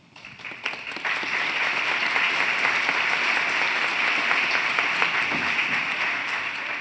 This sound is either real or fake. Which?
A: real